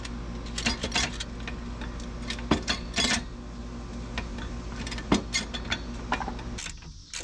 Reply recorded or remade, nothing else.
recorded